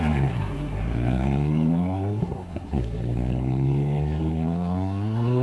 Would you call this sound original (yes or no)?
no